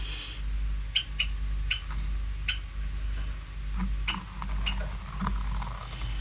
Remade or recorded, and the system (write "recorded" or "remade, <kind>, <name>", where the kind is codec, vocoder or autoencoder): recorded